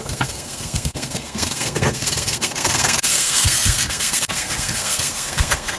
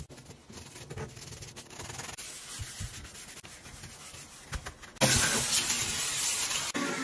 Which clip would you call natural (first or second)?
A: second